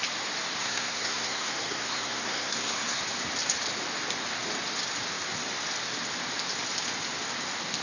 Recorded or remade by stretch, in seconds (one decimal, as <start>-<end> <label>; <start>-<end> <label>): 0.0-0.6 recorded; 0.6-3.0 remade; 3.0-7.8 recorded

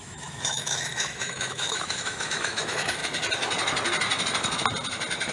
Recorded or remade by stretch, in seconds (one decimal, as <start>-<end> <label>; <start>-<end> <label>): 0.0-3.0 remade; 3.0-5.3 recorded

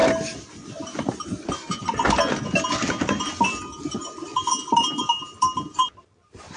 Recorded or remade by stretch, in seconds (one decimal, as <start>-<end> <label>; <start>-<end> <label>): 0.0-6.6 recorded